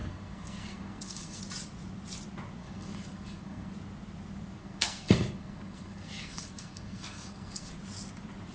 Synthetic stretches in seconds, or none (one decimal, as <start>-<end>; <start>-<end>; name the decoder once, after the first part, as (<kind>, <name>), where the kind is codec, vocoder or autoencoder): 0.0-1.4 (codec, SNAC); 2.6-3.7; 4.6-7.7